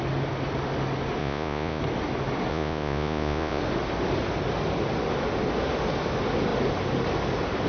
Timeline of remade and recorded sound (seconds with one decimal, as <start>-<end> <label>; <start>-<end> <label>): 0.0-1.2 recorded; 1.2-1.8 remade; 1.8-2.5 recorded; 2.5-3.6 remade; 3.6-7.7 recorded